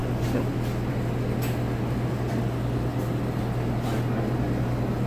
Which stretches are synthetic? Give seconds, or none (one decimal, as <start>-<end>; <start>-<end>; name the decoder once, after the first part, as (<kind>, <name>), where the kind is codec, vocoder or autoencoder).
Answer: none